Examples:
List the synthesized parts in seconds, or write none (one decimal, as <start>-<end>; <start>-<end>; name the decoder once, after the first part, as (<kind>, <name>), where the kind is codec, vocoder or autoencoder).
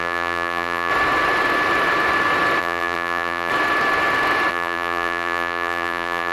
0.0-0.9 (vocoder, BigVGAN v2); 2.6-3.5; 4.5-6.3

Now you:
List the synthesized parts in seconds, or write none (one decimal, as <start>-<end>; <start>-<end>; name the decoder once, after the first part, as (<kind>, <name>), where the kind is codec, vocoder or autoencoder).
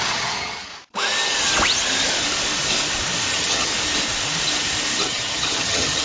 0.0-0.7 (vocoder, HiFi-GAN); 3.3-3.7; 5.0-6.0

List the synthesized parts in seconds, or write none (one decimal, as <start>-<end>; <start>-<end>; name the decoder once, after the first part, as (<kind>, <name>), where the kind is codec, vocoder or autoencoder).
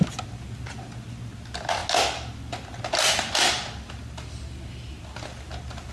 none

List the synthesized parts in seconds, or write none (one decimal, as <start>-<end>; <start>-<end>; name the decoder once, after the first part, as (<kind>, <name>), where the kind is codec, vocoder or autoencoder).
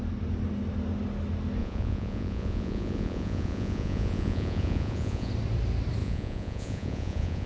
1.6-5.3 (vocoder, Vocos); 6.0-7.5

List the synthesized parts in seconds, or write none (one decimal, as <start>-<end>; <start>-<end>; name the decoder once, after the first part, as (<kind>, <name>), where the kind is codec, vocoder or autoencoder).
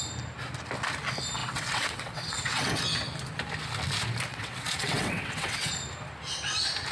1.4-2.8 (vocoder, WaveNeXt); 4.3-5.7